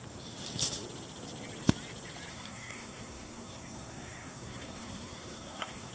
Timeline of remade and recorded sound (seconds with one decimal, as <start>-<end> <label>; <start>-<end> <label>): 0.0-2.3 recorded; 2.3-5.9 remade